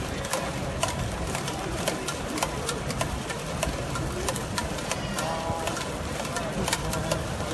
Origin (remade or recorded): recorded